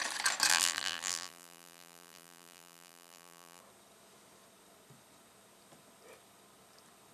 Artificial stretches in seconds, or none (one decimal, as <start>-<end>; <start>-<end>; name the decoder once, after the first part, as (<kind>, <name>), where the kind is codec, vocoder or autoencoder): 0.5-3.6 (vocoder, BigVGAN v2)

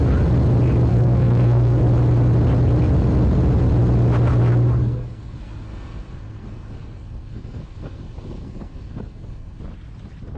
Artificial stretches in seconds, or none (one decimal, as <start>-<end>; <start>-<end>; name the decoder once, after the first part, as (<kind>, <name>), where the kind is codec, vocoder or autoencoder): 0.9-1.8 (codec, SNAC); 4.8-9.6

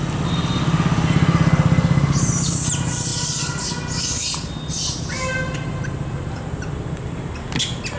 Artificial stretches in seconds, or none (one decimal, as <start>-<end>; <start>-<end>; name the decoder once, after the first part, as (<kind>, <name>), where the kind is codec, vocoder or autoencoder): 3.1-3.7 (vocoder, BigVGAN v2)

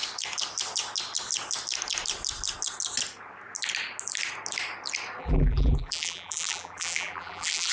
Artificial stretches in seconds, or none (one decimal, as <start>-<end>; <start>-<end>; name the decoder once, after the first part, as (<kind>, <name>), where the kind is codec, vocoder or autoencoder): 5.2-7.7 (vocoder, BigVGAN v2)

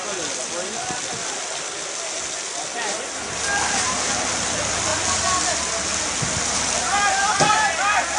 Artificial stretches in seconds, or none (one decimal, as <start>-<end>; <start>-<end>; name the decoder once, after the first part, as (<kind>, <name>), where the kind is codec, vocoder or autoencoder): none

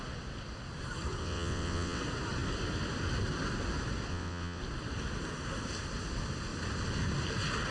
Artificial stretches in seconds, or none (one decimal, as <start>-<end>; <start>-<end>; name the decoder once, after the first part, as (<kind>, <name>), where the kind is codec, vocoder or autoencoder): 1.2-2.0 (vocoder, WaveNeXt); 4.1-4.6

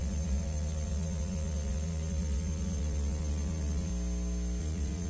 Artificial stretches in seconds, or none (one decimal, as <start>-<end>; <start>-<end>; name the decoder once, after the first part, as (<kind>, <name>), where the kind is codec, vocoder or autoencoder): 0.0-3.9 (vocoder, Vocos); 4.6-5.1

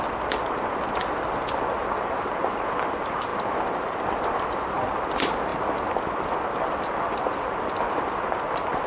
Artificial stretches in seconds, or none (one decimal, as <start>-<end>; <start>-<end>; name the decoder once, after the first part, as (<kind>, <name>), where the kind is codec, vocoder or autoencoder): none